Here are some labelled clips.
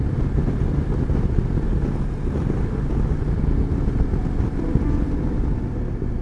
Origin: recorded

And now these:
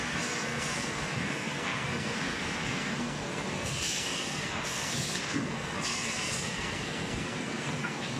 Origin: remade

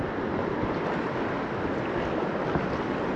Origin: recorded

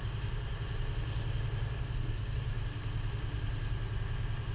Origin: recorded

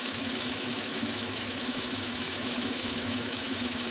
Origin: remade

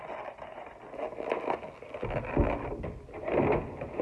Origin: recorded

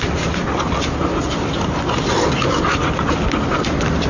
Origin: recorded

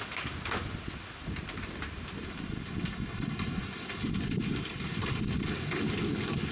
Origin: recorded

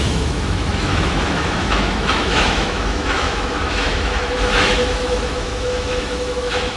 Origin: remade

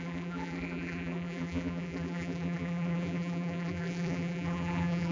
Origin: remade